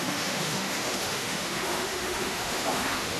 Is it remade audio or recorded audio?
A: remade